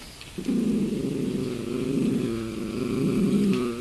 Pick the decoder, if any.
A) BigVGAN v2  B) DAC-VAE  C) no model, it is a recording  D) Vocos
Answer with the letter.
C